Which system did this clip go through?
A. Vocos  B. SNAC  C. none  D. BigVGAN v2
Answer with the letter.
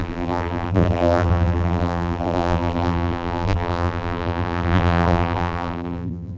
D